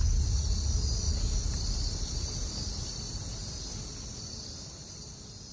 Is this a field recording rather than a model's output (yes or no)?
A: yes